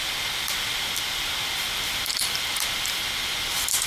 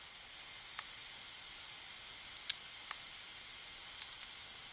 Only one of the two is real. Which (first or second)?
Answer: second